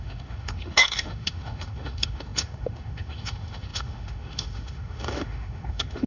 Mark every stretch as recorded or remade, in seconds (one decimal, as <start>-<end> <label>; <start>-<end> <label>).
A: 0.0-6.1 remade